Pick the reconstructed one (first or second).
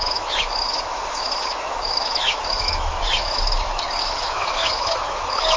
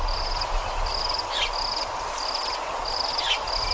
first